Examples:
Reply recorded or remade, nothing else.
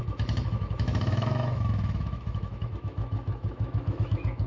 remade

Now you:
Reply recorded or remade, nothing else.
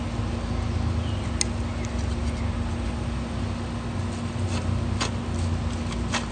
recorded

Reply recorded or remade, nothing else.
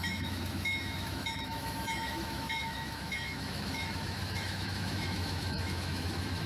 remade